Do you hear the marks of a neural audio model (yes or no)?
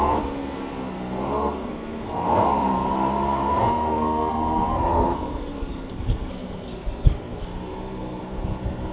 yes